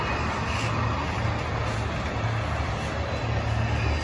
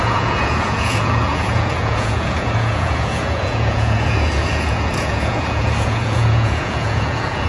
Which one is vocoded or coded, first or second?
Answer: second